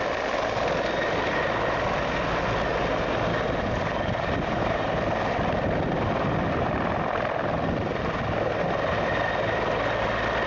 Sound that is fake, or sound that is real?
real